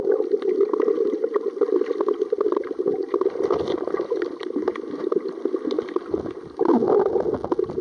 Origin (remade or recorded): recorded